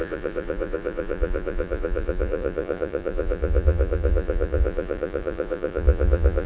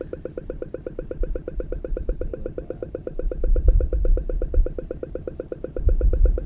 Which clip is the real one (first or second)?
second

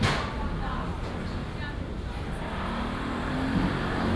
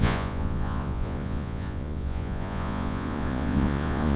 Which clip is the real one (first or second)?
first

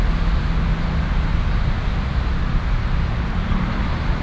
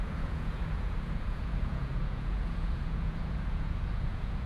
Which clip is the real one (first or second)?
first